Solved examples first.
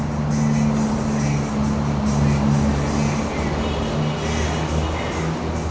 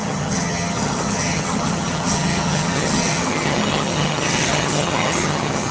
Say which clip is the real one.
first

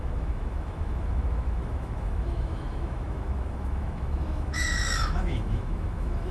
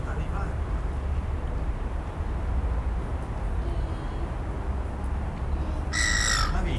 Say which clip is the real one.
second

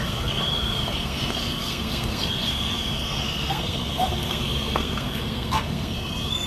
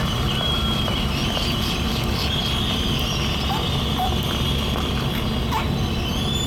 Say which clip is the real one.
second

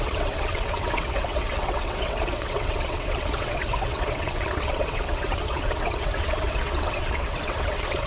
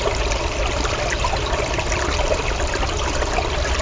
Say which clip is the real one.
second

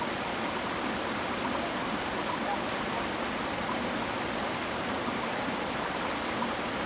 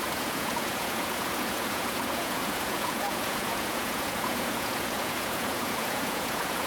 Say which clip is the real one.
first